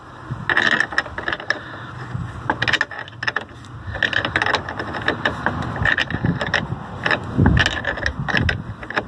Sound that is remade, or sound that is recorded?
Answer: recorded